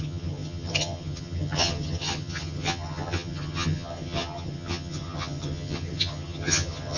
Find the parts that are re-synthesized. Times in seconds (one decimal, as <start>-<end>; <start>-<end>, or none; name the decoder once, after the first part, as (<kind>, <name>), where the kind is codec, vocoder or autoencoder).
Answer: 0.0-7.0 (vocoder, HiFi-GAN)